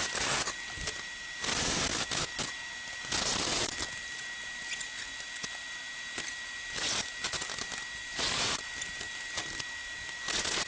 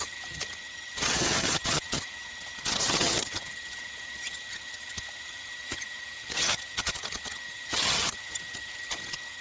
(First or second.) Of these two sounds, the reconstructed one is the second